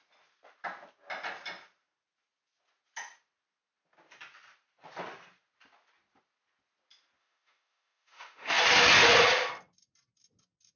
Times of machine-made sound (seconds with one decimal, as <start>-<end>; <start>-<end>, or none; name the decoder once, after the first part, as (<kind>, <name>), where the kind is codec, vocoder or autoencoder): 7.2-8.6 (autoencoder, DAC-VAE)